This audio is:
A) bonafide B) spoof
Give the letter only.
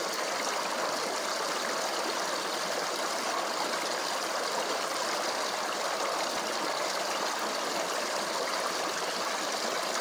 A